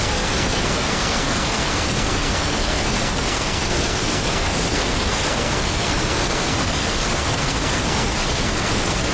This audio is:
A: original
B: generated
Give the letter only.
B